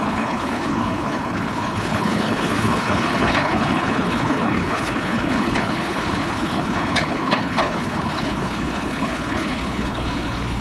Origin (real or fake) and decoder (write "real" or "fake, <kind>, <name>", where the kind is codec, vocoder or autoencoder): fake, codec, HILCodec